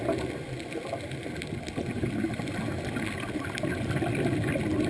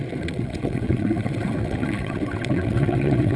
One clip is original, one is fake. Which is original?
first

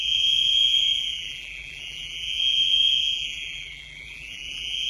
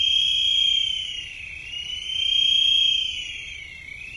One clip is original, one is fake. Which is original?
second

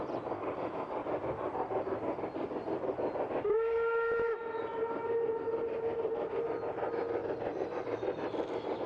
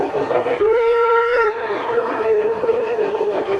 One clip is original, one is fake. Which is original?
first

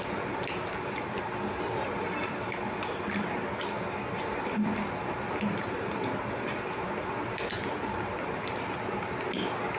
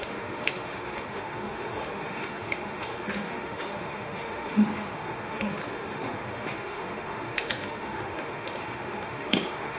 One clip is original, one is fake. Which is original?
first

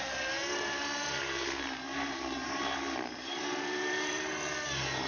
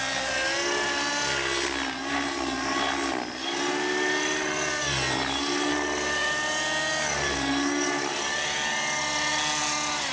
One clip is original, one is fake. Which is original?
second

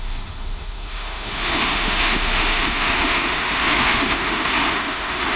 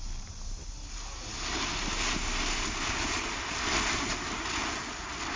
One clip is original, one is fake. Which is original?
second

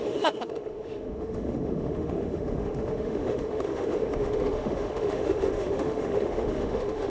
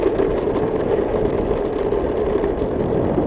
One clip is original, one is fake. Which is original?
second